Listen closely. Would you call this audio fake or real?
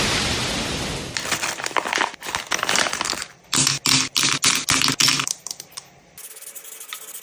real